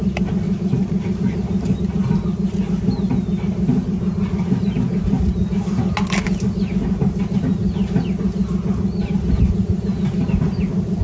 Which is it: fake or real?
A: real